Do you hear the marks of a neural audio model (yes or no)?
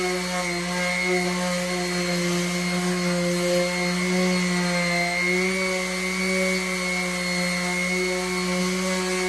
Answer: no